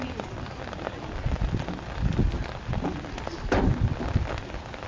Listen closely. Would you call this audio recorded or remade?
recorded